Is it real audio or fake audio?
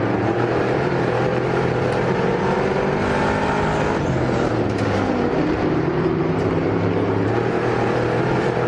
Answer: fake